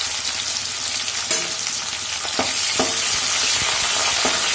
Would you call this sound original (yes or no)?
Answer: yes